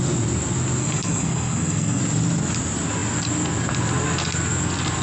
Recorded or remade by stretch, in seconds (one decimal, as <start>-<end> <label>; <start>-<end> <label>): 0.0-0.8 recorded; 0.8-2.0 remade; 2.0-5.0 recorded